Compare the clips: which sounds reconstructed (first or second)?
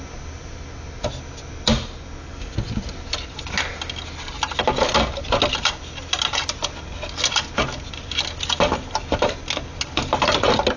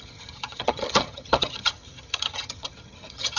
second